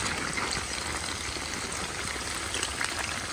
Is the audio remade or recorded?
recorded